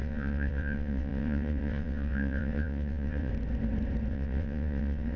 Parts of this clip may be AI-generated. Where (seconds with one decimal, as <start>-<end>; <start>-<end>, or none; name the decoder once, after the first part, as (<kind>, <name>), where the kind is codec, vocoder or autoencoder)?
0.0-3.3 (vocoder, WaveNeXt); 4.1-5.2